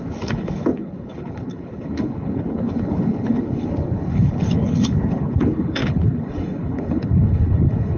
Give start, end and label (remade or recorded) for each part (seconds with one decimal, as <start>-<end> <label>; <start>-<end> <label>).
0.0-8.0 remade